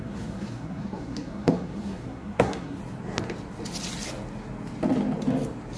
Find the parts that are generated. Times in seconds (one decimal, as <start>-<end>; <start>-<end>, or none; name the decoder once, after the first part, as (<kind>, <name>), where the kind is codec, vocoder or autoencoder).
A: 0.0-2.8 (codec, SNAC)